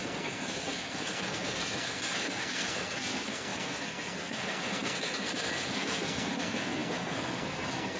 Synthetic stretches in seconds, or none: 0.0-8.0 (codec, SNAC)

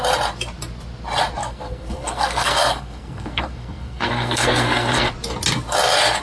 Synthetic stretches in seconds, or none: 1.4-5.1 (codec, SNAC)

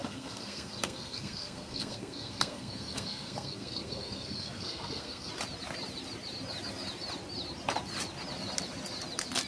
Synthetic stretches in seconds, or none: 0.0-5.3 (codec, SNAC)

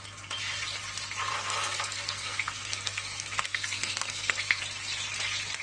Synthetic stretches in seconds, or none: 1.3-4.6 (codec, SNAC)